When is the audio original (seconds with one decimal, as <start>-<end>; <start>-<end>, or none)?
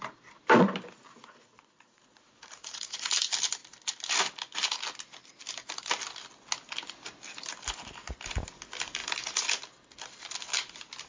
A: 0.0-1.4; 3.1-11.1